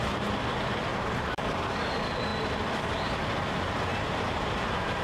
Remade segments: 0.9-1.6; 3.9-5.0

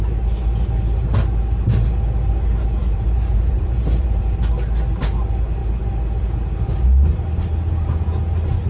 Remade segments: 2.8-4.2

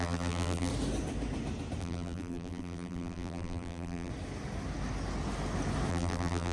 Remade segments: 0.0-0.7; 1.8-4.1; 5.9-6.5

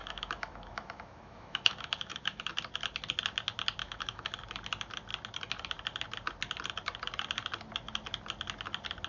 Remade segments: 0.0-2.5; 3.8-4.4

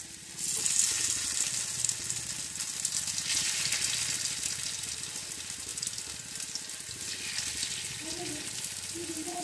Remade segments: none

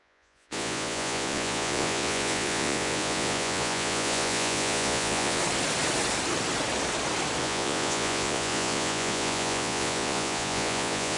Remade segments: 0.0-5.4; 7.4-11.2